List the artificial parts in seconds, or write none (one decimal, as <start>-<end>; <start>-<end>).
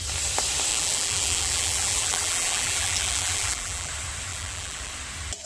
0.7-3.9; 4.3-4.9